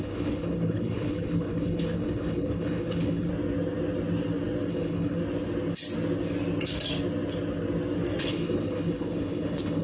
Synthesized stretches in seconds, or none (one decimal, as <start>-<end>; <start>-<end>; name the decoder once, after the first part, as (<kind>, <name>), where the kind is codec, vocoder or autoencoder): 0.0-3.3 (codec, HILCodec); 4.7-5.2; 8.2-9.8